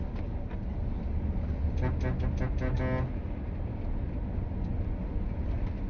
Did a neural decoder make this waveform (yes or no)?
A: no